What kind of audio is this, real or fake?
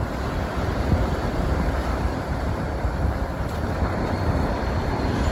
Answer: fake